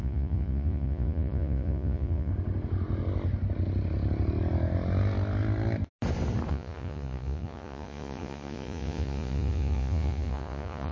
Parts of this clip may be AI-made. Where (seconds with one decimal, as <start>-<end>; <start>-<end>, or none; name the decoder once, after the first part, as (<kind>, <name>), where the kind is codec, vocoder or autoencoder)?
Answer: 0.0-2.3 (vocoder, Vocos); 6.5-10.9